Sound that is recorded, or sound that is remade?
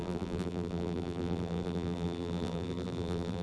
remade